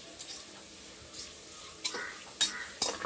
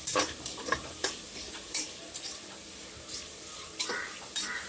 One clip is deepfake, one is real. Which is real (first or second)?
first